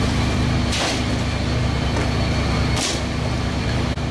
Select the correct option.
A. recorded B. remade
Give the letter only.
A